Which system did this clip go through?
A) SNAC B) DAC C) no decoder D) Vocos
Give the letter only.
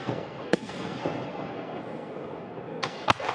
A